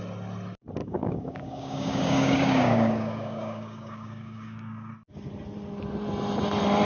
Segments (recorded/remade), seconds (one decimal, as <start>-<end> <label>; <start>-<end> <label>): 0.0-0.8 recorded; 0.8-4.9 remade; 4.9-6.8 recorded